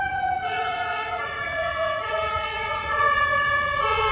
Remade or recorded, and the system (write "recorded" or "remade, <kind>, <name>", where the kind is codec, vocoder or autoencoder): remade, vocoder, Vocos